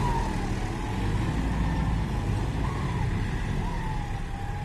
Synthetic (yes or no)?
no